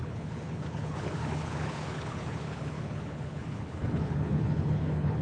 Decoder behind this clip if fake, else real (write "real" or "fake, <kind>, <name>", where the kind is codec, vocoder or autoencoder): fake, codec, HILCodec